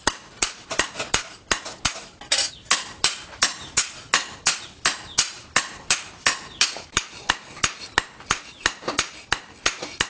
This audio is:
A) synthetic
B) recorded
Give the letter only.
B